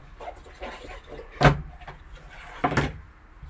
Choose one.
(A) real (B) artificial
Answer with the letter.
A